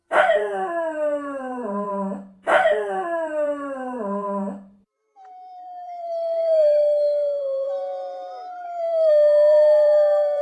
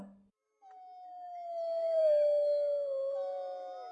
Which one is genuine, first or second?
second